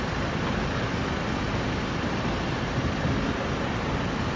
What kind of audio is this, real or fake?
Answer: real